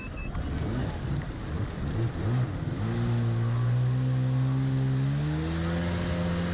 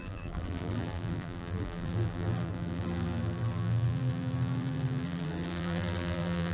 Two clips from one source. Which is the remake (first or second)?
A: second